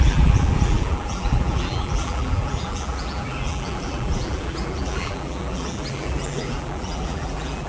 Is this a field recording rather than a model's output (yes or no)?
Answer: no